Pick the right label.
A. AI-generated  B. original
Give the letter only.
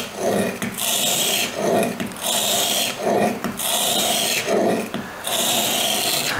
B